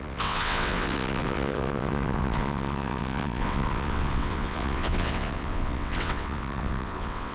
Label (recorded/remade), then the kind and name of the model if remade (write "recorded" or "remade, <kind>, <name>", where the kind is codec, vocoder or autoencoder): remade, vocoder, WaveNeXt